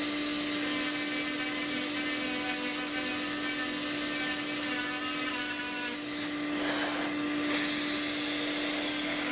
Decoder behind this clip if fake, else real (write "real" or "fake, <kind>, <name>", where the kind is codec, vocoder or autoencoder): real